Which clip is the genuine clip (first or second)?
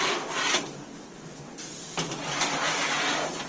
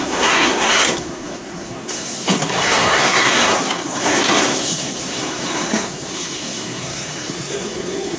first